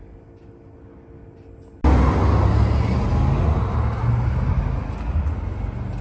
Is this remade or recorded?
recorded